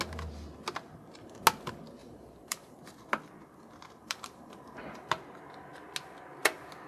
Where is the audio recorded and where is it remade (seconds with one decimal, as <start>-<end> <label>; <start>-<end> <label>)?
0.0-2.0 recorded; 2.0-2.8 remade; 2.8-4.0 recorded; 4.0-5.2 remade; 5.2-6.9 recorded